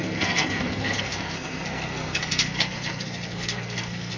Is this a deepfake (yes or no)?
yes